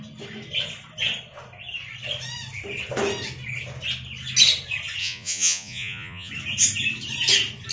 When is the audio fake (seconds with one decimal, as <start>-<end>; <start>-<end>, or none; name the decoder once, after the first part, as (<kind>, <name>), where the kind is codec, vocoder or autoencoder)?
5.0-6.3 (vocoder, Vocos)